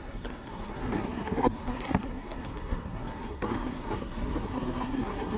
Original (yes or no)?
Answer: no